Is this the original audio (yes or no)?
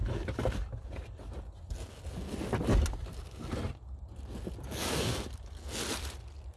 yes